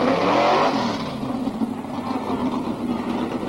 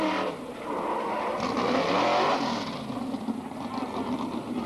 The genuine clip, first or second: first